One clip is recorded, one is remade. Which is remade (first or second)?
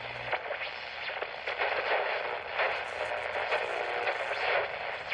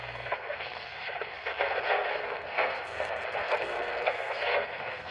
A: second